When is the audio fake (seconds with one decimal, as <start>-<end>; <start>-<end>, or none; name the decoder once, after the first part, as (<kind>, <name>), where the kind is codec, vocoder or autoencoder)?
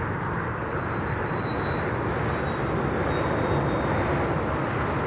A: none